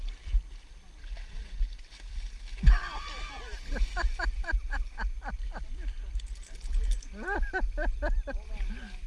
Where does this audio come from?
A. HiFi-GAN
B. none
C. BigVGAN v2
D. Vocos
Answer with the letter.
B